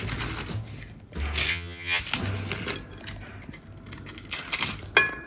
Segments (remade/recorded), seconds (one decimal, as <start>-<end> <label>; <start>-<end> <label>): 0.0-1.5 recorded; 1.5-2.0 remade; 2.0-5.3 recorded